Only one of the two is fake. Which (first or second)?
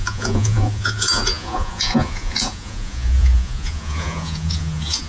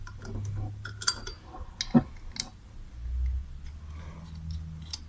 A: first